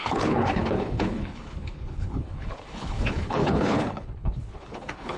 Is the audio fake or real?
fake